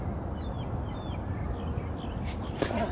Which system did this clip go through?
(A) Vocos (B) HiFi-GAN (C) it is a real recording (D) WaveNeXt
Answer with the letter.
C